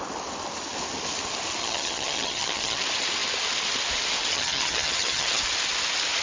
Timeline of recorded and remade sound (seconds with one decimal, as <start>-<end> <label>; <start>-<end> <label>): 0.0-1.6 recorded; 1.6-2.8 remade; 2.8-4.3 recorded; 4.3-5.4 remade; 5.4-6.2 recorded